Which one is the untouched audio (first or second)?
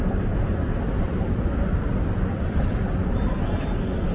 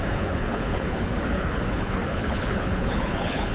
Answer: first